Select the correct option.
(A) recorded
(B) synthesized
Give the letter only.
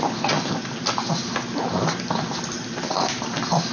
A